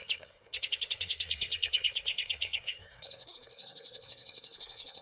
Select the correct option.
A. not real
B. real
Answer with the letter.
A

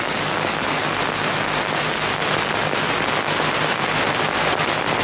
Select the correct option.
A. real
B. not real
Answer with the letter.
A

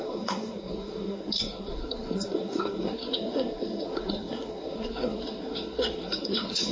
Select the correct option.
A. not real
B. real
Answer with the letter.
A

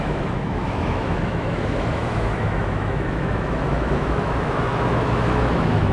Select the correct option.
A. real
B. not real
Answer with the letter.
B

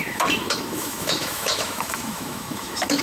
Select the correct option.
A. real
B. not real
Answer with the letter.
B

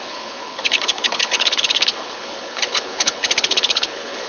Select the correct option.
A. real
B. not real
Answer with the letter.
B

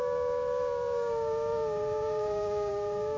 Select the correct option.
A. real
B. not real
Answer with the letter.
B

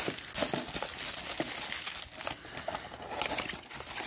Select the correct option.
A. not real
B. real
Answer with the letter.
B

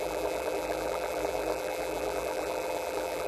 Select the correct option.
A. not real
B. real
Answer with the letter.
A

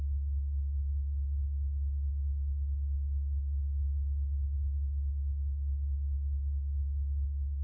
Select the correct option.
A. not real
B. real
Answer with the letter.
A